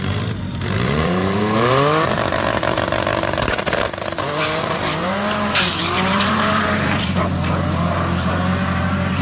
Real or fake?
fake